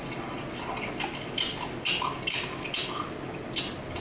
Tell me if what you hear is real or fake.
real